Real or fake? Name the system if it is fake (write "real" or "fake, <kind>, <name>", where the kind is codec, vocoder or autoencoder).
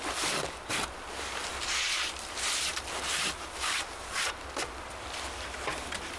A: fake, vocoder, BigVGAN v2